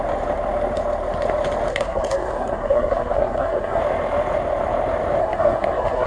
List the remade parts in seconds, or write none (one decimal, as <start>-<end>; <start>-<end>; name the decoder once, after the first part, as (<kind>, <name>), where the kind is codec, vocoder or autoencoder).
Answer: 1.7-3.8 (codec, SNAC); 5.2-6.1